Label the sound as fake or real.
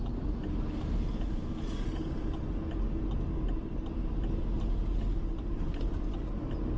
real